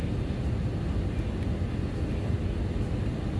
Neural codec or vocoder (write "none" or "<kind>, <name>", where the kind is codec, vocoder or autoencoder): none